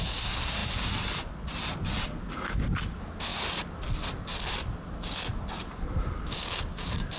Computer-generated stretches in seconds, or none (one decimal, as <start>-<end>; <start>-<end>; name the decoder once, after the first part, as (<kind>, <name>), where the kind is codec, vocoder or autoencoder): none